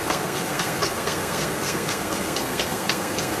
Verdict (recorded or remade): remade